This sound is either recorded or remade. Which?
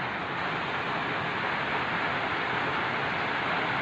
recorded